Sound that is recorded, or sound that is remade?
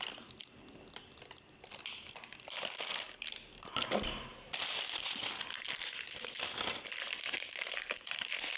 recorded